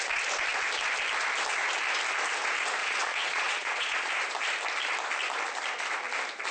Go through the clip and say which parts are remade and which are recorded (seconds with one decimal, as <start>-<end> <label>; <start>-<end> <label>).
0.0-2.8 recorded; 2.8-4.1 remade; 4.1-6.5 recorded